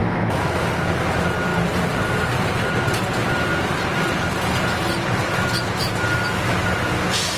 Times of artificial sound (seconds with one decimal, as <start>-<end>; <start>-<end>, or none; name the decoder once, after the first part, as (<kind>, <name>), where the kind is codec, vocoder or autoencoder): none